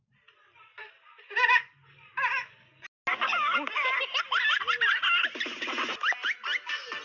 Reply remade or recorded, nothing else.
recorded